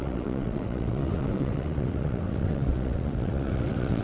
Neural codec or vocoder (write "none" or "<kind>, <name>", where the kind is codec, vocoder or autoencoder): vocoder, WaveNeXt